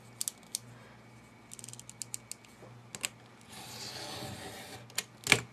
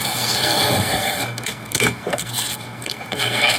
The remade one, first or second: second